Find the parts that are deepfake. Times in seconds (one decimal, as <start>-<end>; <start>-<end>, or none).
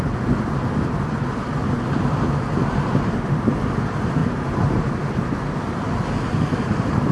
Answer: 1.6-3.6; 4.2-4.8